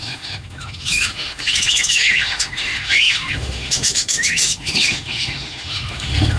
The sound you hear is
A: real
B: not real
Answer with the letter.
B